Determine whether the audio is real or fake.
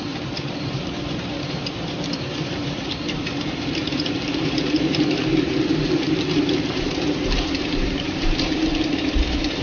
fake